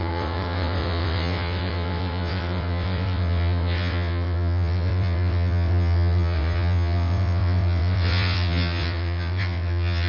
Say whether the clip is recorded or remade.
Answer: remade